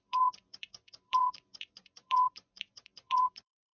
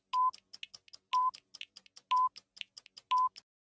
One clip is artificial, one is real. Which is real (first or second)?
second